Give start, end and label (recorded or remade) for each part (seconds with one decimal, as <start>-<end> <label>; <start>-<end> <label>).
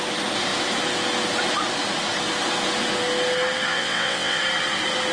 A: 0.0-3.7 recorded; 3.7-4.4 remade; 4.4-5.1 recorded